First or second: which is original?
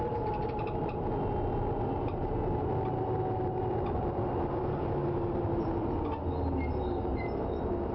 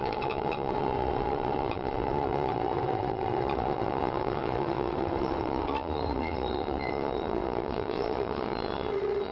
first